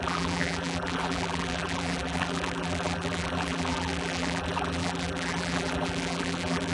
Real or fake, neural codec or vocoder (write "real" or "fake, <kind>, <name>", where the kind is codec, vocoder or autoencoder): fake, vocoder, BigVGAN v2